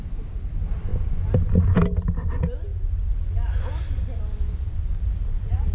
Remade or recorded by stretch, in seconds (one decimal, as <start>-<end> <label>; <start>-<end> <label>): 0.0-5.7 recorded